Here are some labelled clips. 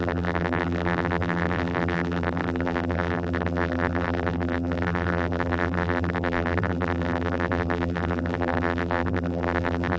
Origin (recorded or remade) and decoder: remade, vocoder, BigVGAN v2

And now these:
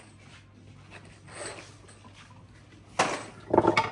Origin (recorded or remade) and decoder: recorded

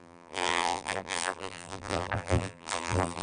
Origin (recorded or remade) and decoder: remade, vocoder, BigVGAN v2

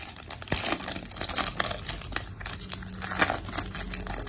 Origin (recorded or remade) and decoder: recorded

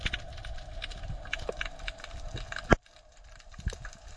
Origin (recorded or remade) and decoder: recorded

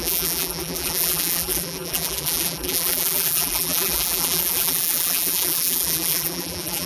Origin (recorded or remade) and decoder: remade, vocoder, BigVGAN v2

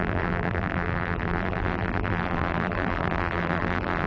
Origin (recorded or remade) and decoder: remade, vocoder, BigVGAN v2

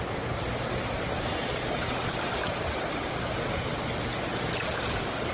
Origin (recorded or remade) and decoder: recorded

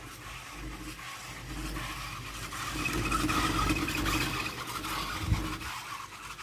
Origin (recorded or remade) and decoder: recorded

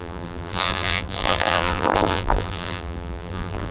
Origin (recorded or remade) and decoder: remade, vocoder, BigVGAN v2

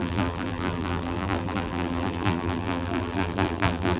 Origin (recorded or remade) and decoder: remade, vocoder, BigVGAN v2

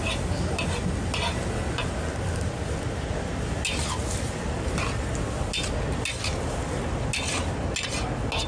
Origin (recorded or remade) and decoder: recorded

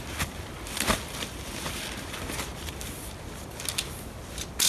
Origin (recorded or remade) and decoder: recorded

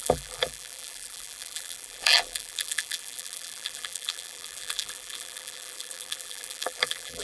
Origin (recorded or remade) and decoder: remade, vocoder, BigVGAN v2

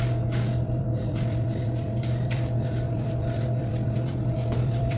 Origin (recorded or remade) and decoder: remade, vocoder, BigVGAN v2